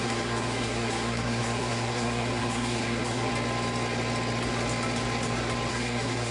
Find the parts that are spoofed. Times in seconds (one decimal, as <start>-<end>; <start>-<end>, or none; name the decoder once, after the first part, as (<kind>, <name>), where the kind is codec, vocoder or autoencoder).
0.0-3.3 (codec, SNAC); 5.7-6.3